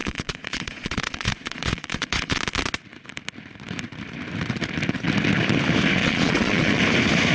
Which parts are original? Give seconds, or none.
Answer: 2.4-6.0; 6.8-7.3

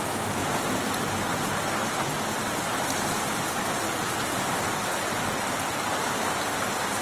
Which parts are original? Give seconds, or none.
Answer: 0.0-7.0

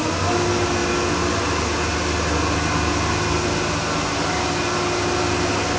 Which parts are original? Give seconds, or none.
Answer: 0.0-5.8

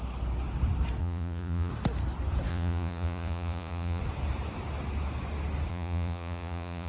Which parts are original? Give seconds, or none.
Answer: 0.0-1.0; 1.7-2.5; 4.0-5.7

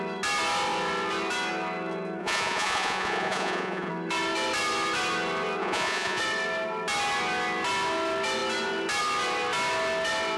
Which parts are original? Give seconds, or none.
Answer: 0.0-2.2; 3.9-5.6; 6.2-10.4

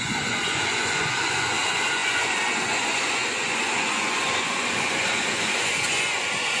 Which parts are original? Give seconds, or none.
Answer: none

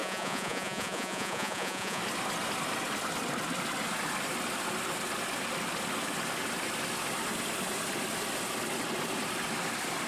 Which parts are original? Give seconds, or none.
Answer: 2.0-10.1

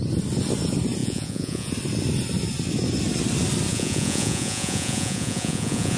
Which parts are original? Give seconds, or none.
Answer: 0.0-1.0; 1.7-3.7